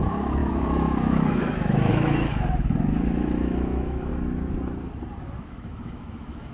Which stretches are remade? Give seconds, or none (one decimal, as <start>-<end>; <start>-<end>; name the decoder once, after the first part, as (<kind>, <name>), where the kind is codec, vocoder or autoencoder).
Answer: 0.0-4.1 (autoencoder, DAC-VAE); 5.2-6.5